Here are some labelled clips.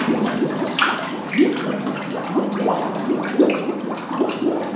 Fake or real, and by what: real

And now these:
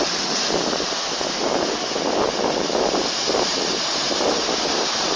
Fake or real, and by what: real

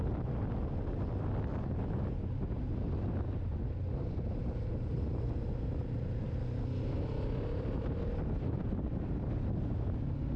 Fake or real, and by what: real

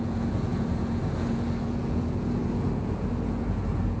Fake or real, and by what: fake, vocoder, Vocos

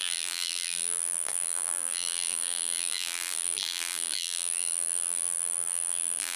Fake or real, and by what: fake, vocoder, BigVGAN v2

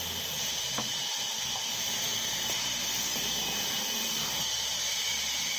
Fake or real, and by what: real